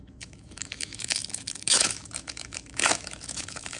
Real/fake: fake